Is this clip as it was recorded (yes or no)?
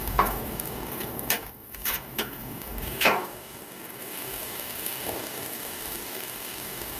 no